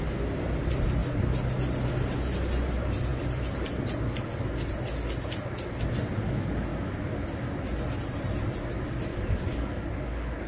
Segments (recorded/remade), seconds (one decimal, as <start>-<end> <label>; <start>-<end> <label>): 0.0-9.1 recorded; 9.1-10.5 remade